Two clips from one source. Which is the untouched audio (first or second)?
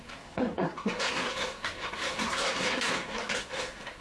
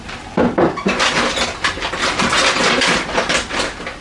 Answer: second